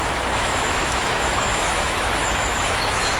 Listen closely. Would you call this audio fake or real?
fake